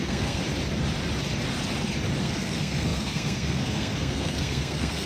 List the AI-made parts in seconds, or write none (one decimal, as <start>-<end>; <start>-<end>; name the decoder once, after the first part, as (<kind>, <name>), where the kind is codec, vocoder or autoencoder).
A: 0.0-0.4 (codec, SNAC); 2.2-5.1